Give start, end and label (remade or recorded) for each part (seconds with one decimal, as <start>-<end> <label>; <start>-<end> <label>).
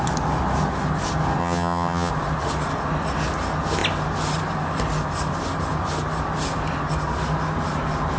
0.0-1.4 recorded; 1.4-2.1 remade; 2.1-8.2 recorded